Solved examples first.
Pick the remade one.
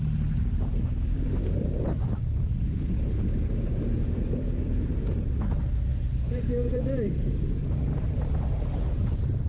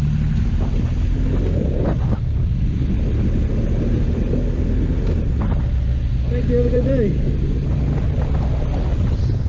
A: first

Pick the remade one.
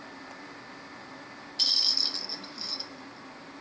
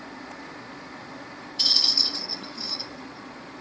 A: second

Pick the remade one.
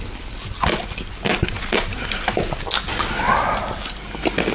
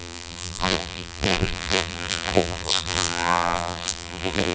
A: second